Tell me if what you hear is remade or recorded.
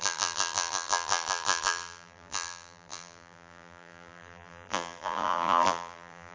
remade